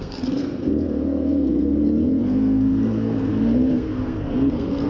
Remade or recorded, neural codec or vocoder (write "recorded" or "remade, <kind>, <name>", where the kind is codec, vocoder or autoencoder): remade, codec, SNAC